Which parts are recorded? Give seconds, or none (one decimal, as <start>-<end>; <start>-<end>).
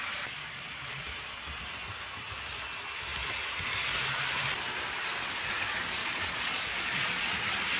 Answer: 0.0-6.0; 7.2-7.8